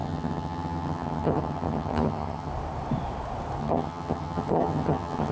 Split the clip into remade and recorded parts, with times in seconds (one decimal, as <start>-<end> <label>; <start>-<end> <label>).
0.0-2.5 remade; 2.5-3.6 recorded; 3.6-5.3 remade

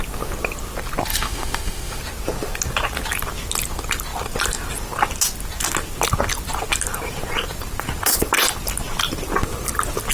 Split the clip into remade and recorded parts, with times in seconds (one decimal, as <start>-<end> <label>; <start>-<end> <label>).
0.0-1.1 recorded; 1.1-2.0 remade; 2.0-10.1 recorded

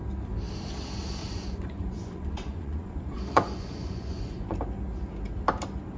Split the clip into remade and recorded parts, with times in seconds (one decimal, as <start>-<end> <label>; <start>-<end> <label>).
0.0-1.2 recorded; 1.2-4.6 remade; 4.6-6.0 recorded